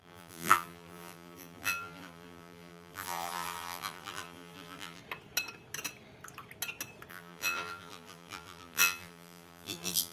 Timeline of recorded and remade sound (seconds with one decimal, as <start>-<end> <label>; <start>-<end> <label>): 0.0-5.0 remade; 5.0-7.1 recorded; 7.1-10.1 remade